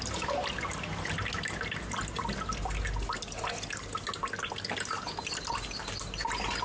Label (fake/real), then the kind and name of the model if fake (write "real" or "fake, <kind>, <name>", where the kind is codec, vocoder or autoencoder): real